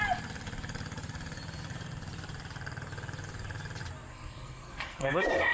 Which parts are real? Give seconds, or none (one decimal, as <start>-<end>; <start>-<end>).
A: 0.0-4.1; 5.1-5.5